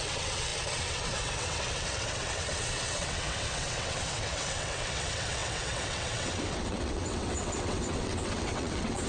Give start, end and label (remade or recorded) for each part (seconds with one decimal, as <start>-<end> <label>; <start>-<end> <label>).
0.0-9.1 remade